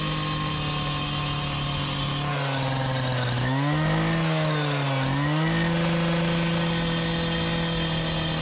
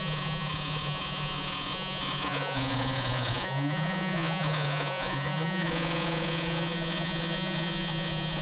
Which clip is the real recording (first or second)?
first